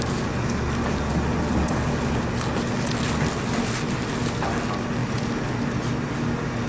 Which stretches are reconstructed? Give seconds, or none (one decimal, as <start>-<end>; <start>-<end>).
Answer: none